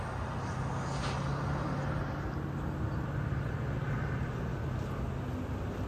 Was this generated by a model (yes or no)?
no